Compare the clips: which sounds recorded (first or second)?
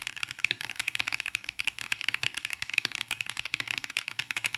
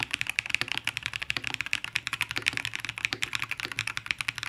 second